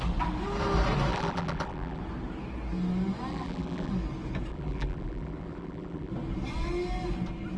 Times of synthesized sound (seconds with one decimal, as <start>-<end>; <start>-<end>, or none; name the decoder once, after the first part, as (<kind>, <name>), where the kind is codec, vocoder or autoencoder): 1.1-2.0 (vocoder, BigVGAN v2); 3.3-3.9; 4.5-6.1